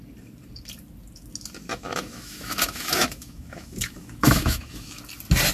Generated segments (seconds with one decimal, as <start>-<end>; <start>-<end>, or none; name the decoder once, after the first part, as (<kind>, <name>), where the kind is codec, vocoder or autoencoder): 1.7-5.0 (autoencoder, DAC-VAE)